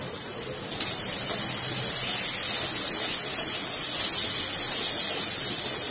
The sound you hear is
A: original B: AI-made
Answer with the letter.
A